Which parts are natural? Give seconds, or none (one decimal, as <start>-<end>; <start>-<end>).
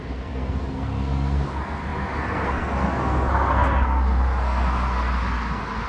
none